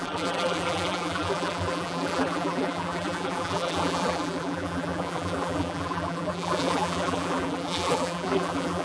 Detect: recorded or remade remade